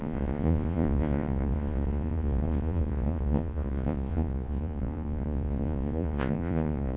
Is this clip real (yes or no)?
no